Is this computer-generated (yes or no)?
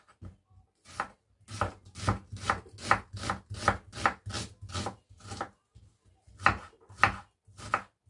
no